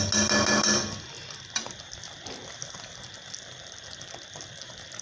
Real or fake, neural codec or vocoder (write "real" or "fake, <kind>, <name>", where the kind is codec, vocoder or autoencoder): real